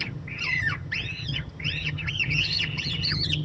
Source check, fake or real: fake